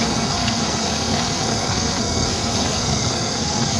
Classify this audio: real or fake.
fake